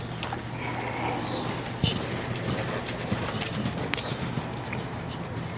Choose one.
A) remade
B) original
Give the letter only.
B